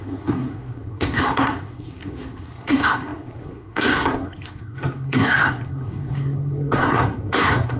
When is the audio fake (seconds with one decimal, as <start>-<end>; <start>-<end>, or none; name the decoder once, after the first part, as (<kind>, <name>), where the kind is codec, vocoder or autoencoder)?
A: 0.0-7.8 (codec, SNAC)